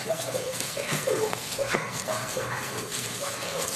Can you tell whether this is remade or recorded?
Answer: remade